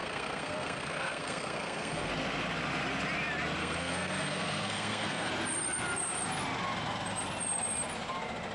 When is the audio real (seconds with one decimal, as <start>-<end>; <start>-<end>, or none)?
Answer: 2.1-3.6; 5.3-8.5